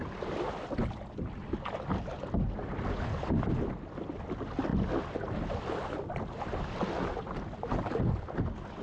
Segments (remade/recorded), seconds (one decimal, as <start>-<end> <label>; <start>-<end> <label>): 0.0-8.8 recorded